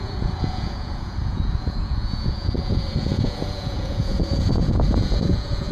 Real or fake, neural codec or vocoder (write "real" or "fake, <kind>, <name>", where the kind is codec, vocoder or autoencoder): fake, vocoder, Vocos